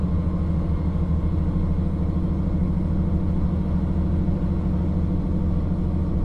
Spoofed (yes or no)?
no